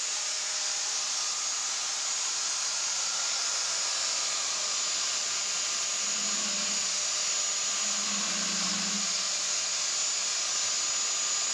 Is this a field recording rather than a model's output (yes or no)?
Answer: yes